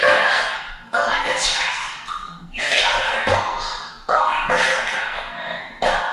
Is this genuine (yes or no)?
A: no